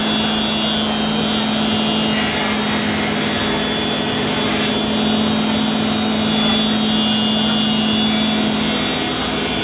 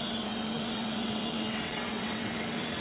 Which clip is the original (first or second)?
first